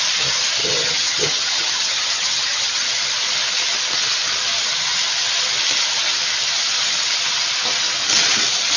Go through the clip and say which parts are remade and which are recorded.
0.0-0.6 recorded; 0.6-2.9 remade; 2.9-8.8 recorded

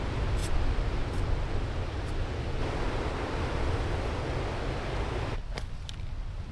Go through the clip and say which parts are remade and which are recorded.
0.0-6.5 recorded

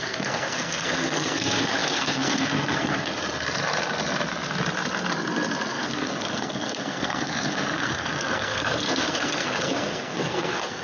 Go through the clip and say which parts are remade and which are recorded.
0.0-3.1 remade; 3.1-5.7 recorded; 5.7-10.8 remade